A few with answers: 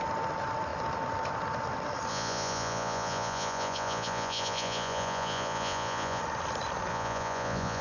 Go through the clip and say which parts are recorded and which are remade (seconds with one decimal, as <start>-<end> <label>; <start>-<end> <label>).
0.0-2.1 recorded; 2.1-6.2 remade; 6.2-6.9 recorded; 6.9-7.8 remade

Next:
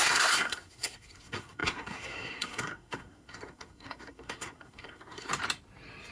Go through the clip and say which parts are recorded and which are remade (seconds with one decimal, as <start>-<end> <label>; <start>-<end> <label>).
0.0-5.3 remade; 5.3-6.1 recorded

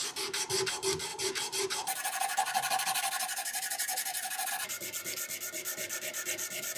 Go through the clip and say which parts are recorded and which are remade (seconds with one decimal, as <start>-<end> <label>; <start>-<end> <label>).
0.0-1.1 recorded; 1.1-4.5 remade; 4.5-6.8 recorded

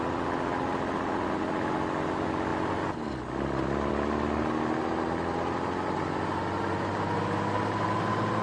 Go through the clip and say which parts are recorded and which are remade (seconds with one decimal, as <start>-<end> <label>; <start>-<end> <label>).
0.0-8.4 recorded

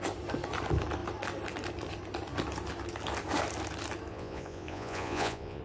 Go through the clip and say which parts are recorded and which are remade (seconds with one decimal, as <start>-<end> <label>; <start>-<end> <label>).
0.0-4.1 recorded; 4.1-5.6 remade